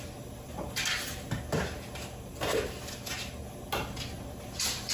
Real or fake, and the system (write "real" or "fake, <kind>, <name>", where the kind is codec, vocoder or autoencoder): real